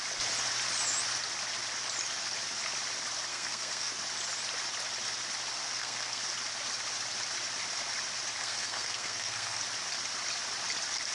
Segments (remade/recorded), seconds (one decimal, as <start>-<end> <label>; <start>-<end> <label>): 0.0-3.3 recorded; 3.3-3.9 remade; 3.9-5.6 recorded; 5.6-6.2 remade; 6.2-8.4 recorded; 8.4-9.6 remade; 9.6-11.1 recorded